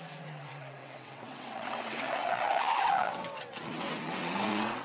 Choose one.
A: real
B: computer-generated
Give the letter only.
B